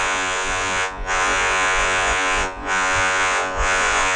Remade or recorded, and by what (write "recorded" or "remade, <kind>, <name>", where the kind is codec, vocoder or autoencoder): remade, vocoder, Vocos